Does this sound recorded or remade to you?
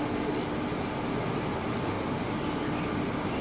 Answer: recorded